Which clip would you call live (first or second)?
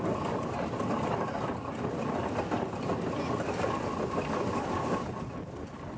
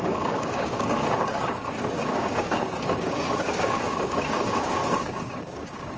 first